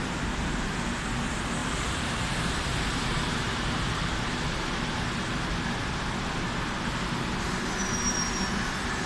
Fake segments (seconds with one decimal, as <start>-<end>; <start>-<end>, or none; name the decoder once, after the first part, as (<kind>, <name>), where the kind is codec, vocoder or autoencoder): 1.6-6.3 (vocoder, BigVGAN v2)